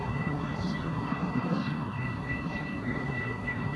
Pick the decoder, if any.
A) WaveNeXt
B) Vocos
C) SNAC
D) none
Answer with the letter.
C